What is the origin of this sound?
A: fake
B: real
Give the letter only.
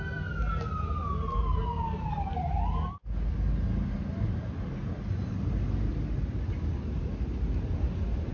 B